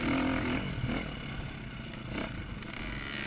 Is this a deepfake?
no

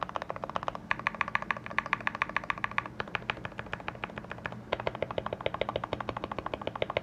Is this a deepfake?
no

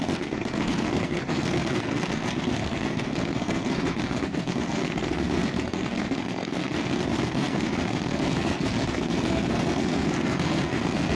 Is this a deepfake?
yes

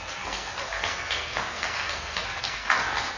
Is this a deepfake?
yes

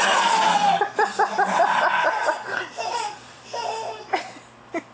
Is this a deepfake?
no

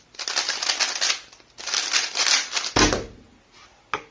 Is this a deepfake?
no